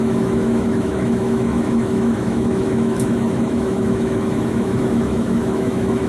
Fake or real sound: fake